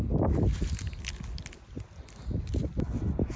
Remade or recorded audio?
recorded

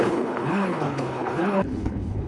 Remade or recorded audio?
remade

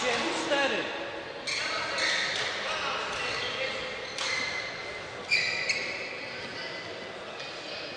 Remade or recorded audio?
recorded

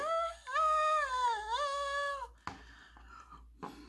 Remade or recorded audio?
recorded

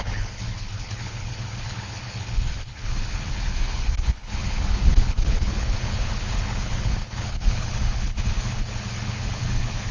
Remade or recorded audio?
remade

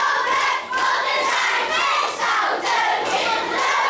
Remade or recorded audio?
recorded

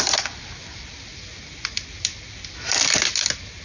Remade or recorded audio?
recorded